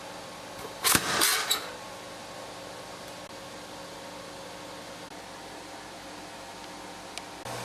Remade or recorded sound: recorded